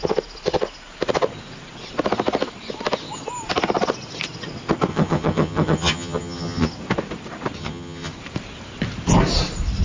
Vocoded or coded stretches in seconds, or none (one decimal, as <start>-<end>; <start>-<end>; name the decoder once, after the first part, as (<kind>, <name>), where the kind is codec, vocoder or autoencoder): 4.9-6.7 (vocoder, HiFi-GAN); 7.6-8.1